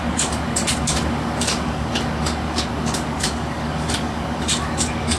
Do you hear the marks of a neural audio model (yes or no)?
yes